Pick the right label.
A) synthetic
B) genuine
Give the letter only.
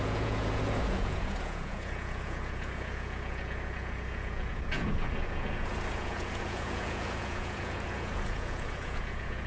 A